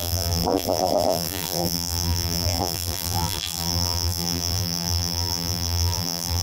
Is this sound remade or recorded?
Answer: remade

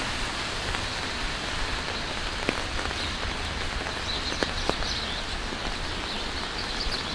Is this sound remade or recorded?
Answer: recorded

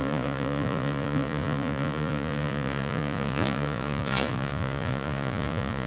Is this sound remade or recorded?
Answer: remade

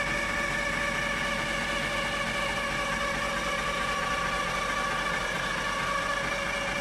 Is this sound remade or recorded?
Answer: recorded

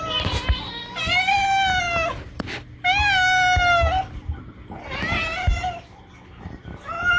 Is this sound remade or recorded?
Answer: recorded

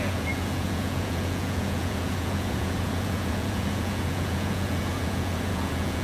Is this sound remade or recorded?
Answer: remade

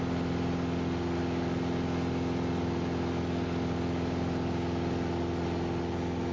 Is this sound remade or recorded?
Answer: recorded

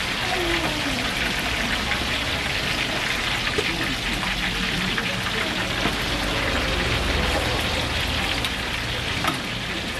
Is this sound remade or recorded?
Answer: recorded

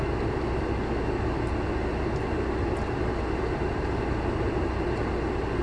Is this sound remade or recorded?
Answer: recorded